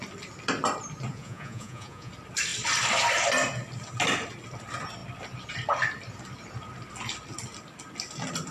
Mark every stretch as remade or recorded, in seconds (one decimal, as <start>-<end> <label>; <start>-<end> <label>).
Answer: 0.0-1.1 recorded; 1.1-2.1 remade; 2.1-8.5 recorded